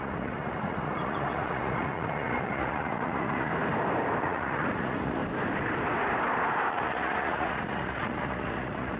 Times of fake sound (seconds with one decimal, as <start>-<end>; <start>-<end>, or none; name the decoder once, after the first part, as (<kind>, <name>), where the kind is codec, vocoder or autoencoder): 0.0-3.5 (vocoder, Vocos); 4.2-5.2; 6.7-9.0